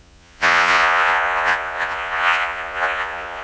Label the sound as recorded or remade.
remade